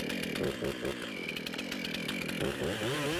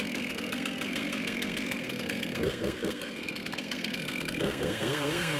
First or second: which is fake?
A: second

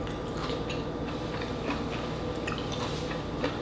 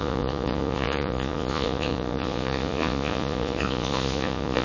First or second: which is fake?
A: second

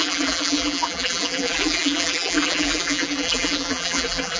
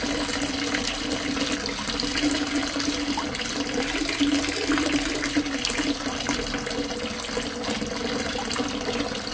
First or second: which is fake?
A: first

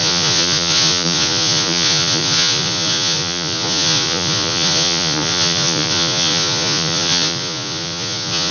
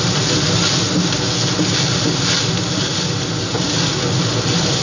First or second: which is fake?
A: first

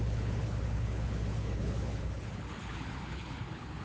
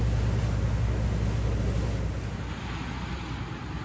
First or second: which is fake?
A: first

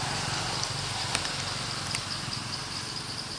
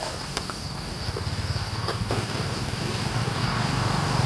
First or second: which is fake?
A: second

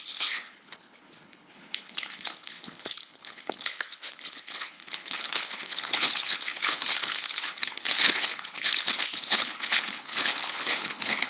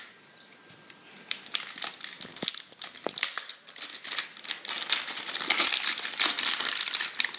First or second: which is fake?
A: first